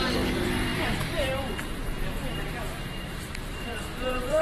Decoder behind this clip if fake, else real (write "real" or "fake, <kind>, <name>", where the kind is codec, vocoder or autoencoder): fake, vocoder, BigVGAN v2